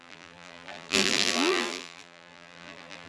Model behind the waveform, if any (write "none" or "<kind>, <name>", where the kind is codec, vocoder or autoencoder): vocoder, BigVGAN v2